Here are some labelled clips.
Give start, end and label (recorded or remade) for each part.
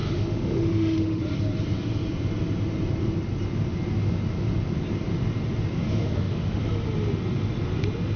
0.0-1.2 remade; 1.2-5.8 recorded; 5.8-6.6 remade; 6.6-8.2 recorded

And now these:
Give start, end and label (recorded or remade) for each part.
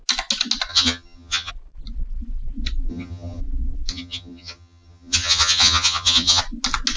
0.0-0.7 recorded; 0.7-1.5 remade; 1.5-2.9 recorded; 2.9-3.4 remade; 3.4-3.9 recorded; 3.9-6.4 remade; 6.4-7.0 recorded